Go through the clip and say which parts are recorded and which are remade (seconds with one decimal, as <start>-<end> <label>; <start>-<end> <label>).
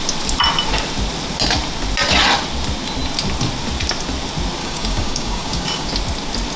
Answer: 0.0-4.6 recorded; 4.6-5.9 remade; 5.9-6.6 recorded